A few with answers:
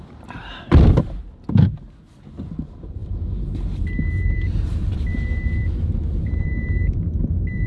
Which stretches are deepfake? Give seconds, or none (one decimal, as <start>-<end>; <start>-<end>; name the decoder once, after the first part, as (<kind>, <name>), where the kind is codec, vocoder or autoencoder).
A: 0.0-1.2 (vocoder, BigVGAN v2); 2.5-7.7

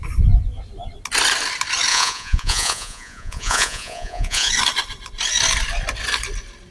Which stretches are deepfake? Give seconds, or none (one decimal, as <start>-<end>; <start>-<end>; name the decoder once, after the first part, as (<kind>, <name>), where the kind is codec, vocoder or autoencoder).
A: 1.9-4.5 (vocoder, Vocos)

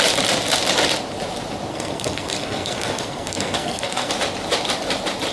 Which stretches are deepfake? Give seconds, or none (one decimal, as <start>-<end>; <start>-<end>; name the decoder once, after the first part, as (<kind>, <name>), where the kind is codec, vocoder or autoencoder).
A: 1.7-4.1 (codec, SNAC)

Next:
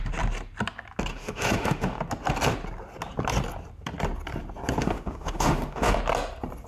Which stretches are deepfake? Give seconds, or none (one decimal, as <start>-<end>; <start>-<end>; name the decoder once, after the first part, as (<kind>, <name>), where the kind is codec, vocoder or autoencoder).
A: 1.1-2.0 (autoencoder, DAC-VAE); 4.8-6.0